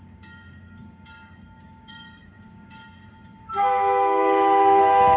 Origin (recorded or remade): remade